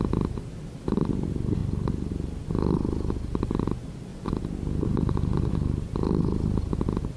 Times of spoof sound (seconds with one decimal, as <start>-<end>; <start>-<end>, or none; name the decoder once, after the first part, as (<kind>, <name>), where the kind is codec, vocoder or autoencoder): none